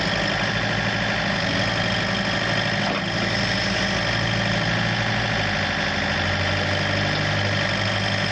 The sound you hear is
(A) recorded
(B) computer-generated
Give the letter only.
A